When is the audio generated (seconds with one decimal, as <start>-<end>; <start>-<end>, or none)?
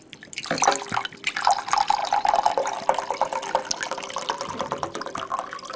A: none